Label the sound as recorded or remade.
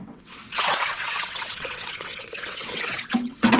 remade